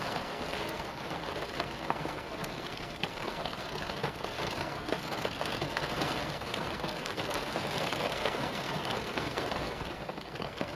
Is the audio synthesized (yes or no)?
yes